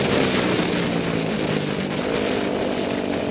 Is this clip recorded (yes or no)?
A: yes